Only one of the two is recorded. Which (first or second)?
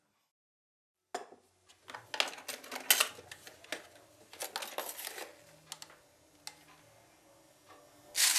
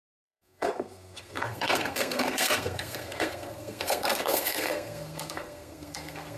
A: first